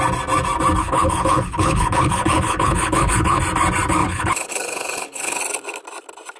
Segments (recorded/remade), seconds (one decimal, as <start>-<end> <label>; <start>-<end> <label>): 0.0-0.8 recorded; 0.8-3.4 remade; 3.4-4.0 recorded; 4.0-5.4 remade; 5.4-6.4 recorded